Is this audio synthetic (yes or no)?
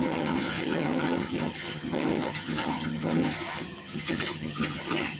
yes